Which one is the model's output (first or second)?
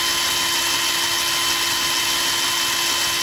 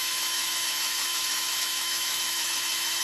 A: second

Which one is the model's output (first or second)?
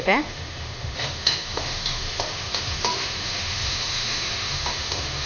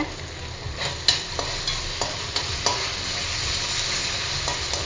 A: first